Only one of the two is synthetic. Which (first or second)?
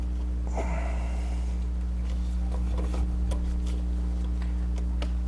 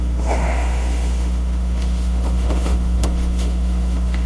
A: second